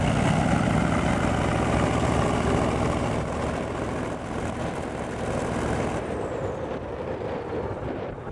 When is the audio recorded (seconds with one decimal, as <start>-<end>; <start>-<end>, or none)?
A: 6.7-7.8